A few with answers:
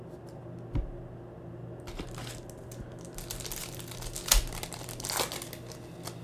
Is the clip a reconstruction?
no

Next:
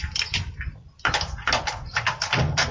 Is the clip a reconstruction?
no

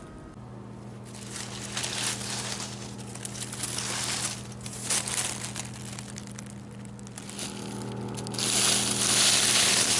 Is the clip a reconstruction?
no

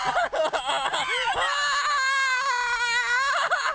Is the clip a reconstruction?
no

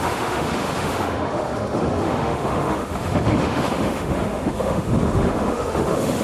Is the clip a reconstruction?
yes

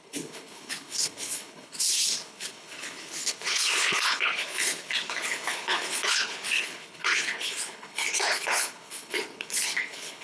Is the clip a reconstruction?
yes